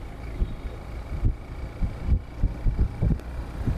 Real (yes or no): yes